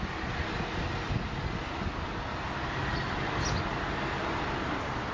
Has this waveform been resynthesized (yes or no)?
no